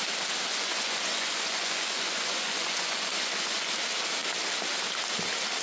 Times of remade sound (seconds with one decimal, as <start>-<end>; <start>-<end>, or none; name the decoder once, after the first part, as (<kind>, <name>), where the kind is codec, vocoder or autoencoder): 0.5-3.7 (vocoder, Vocos)

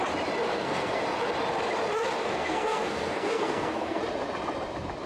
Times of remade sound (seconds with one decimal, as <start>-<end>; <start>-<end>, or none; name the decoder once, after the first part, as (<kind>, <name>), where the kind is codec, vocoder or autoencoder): 0.5-1.0 (codec, SNAC); 2.2-4.0